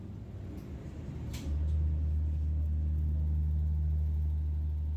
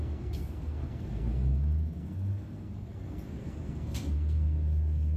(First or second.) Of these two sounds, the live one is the first